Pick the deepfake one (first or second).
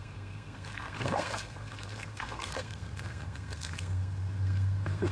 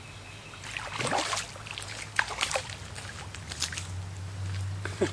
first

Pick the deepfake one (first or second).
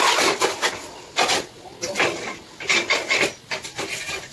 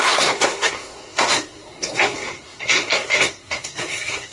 second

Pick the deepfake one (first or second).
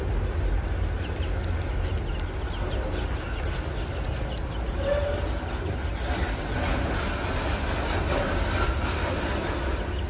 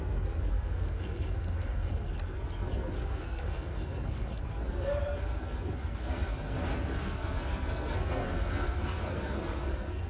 second